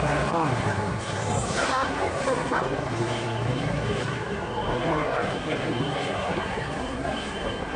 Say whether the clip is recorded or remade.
remade